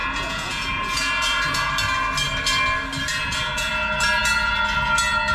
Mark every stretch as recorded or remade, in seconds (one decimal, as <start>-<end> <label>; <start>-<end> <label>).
0.0-1.7 remade; 1.7-3.1 recorded; 3.1-3.7 remade; 3.7-5.3 recorded